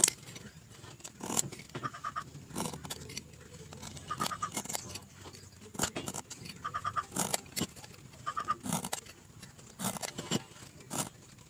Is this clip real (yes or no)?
yes